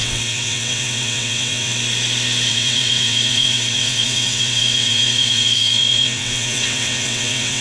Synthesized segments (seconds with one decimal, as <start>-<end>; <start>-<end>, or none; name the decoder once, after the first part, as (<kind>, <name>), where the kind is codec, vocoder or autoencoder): 0.0-1.7 (vocoder, WaveNeXt); 2.5-7.6